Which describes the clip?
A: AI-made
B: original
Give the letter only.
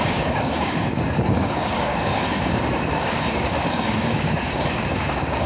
A